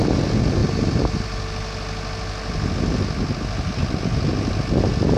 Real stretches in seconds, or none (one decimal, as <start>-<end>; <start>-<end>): 0.0-5.2